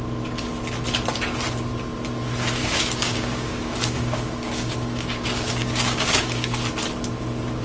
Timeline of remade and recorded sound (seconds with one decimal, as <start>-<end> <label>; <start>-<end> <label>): 0.0-2.6 recorded; 2.6-6.6 remade; 6.6-7.6 recorded